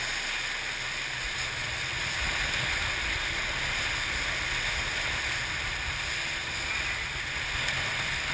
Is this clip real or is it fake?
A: real